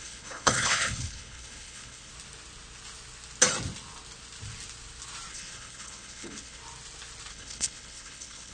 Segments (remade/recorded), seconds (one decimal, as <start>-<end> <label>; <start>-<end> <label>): 0.0-2.1 remade; 2.1-5.3 recorded; 5.3-6.6 remade; 6.6-7.3 recorded; 7.3-8.5 remade